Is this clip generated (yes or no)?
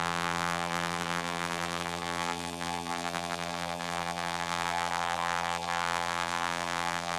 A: yes